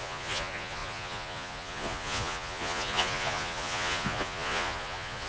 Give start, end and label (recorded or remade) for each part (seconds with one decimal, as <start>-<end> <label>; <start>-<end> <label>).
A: 0.0-5.3 remade